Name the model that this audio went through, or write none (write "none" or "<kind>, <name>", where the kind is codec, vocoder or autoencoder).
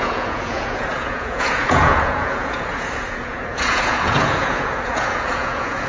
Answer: vocoder, Vocos